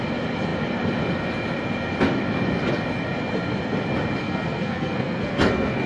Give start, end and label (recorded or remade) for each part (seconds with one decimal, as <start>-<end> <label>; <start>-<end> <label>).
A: 0.0-4.2 recorded; 4.2-5.9 remade